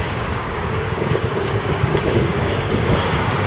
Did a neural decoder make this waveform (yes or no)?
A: yes